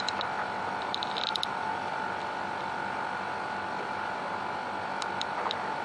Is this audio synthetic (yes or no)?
no